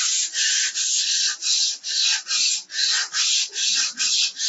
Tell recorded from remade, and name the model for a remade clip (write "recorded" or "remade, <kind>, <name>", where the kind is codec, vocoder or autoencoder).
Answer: recorded